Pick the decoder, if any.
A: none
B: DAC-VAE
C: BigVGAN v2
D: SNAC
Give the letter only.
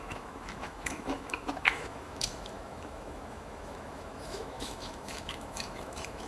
B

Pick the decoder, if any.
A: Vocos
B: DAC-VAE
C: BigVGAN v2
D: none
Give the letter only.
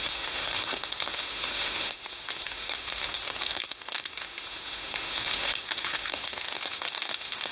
B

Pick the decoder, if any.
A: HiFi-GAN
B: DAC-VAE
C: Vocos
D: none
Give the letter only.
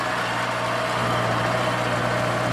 D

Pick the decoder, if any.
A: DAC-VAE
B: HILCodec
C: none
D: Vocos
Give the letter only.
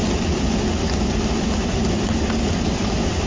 C